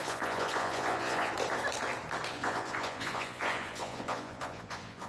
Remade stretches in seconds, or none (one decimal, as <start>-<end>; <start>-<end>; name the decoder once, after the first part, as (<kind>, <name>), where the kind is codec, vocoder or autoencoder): 0.0-1.3 (vocoder, Vocos); 2.3-5.1

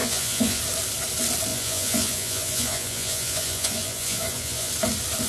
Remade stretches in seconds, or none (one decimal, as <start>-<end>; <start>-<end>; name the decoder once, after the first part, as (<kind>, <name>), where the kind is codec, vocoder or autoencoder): 0.0-0.6 (vocoder, Vocos); 1.5-4.7

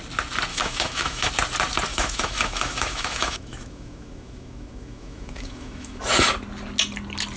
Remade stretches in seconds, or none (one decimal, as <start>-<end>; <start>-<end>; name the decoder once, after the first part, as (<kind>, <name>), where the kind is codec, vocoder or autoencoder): 0.5-1.3 (autoencoder, DAC-VAE); 1.9-6.0